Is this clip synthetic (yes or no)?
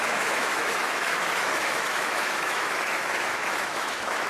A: yes